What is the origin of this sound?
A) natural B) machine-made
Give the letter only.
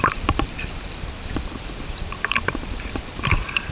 B